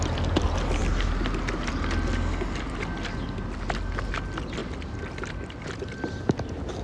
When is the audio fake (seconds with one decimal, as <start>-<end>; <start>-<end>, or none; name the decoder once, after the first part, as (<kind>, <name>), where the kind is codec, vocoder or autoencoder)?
0.0-0.8 (vocoder, BigVGAN v2); 4.1-4.6; 5.3-6.8